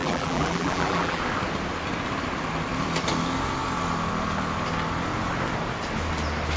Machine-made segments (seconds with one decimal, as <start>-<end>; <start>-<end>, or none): 0.0-1.2